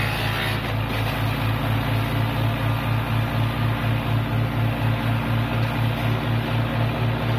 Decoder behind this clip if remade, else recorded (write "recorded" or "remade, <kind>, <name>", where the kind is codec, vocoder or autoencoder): recorded